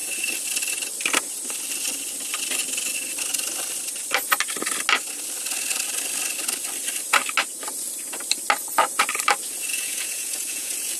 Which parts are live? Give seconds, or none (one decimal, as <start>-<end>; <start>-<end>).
0.0-9.7